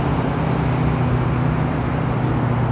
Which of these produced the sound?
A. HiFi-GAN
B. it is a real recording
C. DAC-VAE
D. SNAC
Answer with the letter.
B